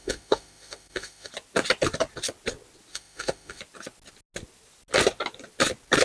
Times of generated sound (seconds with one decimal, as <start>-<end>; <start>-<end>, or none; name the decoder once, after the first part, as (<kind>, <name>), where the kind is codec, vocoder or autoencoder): 0.0-1.3 (autoencoder, DAC-VAE); 2.9-3.6